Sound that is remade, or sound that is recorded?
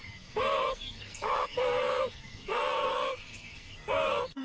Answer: remade